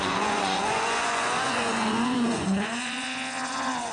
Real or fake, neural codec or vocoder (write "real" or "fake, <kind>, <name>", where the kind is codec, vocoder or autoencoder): fake, vocoder, Vocos